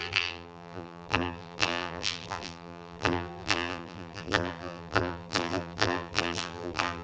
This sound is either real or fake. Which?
fake